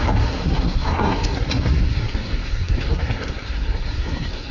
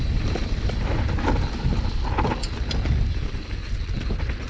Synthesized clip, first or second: first